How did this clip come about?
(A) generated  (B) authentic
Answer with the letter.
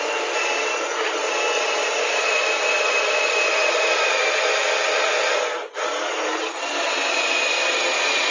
B